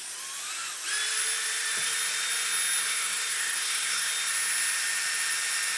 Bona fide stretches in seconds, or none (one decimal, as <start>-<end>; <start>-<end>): 0.0-2.8; 4.1-5.8